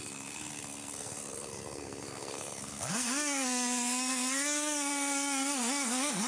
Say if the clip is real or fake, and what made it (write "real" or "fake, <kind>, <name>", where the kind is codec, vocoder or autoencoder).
fake, codec, SNAC